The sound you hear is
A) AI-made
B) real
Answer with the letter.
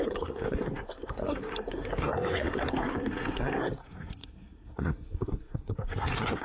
A